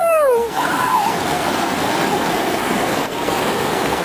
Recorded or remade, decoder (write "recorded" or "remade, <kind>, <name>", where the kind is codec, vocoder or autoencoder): remade, codec, SNAC